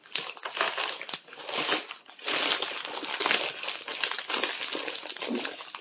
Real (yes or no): yes